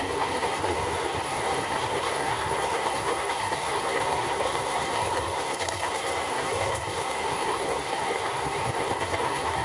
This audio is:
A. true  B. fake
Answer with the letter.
B